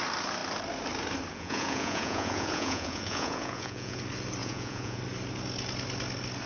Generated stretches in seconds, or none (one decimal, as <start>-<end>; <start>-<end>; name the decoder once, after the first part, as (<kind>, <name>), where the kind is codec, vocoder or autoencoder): 1.3-4.0 (vocoder, Vocos); 4.4-5.0

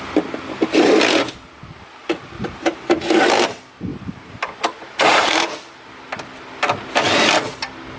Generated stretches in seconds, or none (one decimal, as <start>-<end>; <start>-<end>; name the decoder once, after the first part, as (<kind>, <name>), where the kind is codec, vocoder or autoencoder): 2.0-2.7 (vocoder, BigVGAN v2); 3.9-6.1

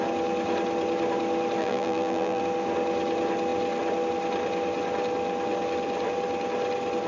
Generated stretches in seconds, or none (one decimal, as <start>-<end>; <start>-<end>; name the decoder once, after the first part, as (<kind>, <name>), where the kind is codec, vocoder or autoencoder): 1.6-2.4 (vocoder, BigVGAN v2)

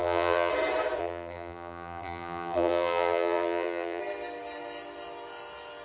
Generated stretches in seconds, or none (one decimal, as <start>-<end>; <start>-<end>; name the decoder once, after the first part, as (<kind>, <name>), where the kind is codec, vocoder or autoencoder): 0.0-0.5 (vocoder, BigVGAN v2); 1.0-4.0

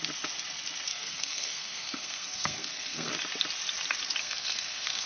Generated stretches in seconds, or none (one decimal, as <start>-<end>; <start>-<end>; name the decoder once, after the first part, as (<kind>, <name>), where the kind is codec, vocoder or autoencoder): 0.9-3.1 (codec, SNAC); 4.2-5.1

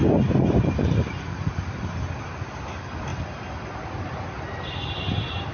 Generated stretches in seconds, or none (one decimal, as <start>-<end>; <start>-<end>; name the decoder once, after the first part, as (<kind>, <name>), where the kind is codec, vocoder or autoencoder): none

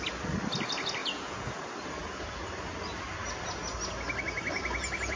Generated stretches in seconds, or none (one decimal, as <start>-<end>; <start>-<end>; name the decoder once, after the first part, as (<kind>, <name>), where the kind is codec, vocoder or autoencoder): 1.0-1.6 (vocoder, Vocos)

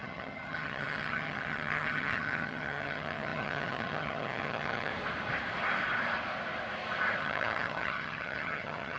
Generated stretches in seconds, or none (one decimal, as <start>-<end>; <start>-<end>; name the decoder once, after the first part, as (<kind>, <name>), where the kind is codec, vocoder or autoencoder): 0.0-4.9 (vocoder, HiFi-GAN); 7.2-9.0